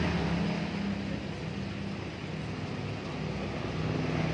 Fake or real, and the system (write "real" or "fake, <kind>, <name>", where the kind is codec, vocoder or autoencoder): real